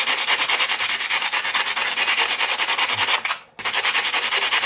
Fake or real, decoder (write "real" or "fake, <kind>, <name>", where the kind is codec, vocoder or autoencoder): real